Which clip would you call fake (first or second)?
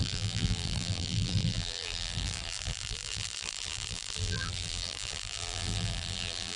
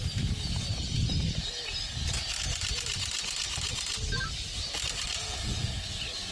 first